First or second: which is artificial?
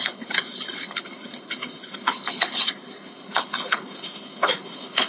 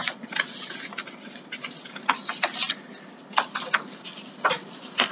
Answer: first